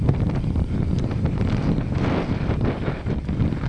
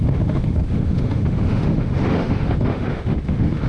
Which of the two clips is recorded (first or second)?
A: first